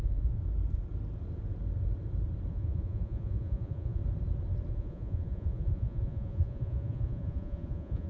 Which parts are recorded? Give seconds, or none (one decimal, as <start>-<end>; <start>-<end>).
0.4-2.5; 4.0-4.7